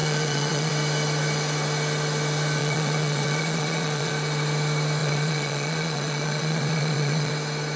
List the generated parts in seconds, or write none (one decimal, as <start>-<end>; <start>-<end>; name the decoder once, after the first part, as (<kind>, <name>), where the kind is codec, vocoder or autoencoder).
0.0-0.7 (vocoder, Vocos); 2.6-4.1; 5.0-7.3